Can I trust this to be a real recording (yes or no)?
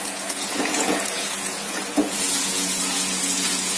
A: no